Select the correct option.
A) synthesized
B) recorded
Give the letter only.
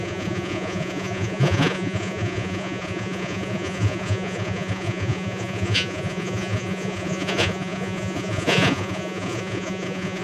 A